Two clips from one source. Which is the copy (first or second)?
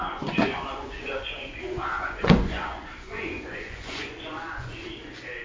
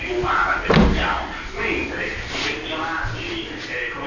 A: first